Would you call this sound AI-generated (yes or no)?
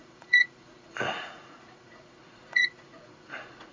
yes